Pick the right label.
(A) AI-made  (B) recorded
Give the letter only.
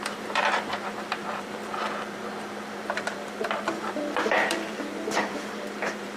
A